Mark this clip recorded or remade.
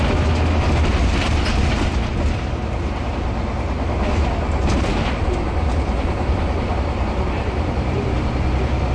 recorded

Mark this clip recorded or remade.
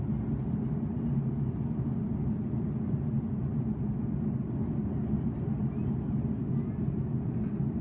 recorded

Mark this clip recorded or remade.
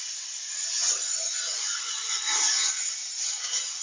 remade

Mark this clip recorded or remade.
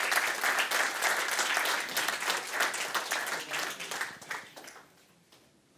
recorded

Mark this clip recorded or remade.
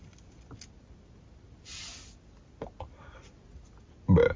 recorded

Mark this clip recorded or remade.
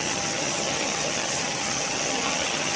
remade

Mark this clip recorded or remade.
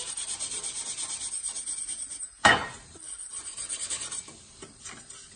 recorded